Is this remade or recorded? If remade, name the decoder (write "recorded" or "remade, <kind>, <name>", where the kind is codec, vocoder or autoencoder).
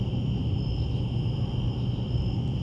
recorded